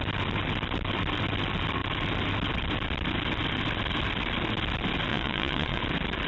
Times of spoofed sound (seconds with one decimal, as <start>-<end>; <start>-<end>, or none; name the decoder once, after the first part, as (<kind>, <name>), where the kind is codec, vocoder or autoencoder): 5.1-5.8 (vocoder, Vocos)

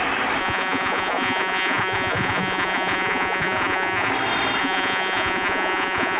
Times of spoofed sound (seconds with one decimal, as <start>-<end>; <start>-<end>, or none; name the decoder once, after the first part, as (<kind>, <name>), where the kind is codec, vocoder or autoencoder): 0.4-4.1 (vocoder, Vocos); 4.6-6.2